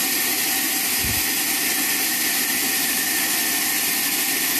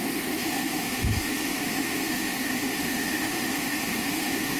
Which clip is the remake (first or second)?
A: second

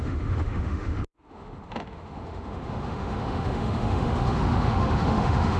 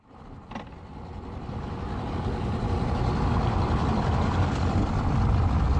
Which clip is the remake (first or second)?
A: first